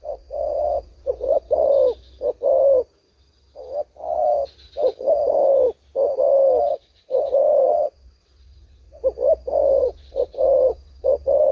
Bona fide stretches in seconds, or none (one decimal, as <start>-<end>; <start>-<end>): 1.7-6.7; 9.0-9.8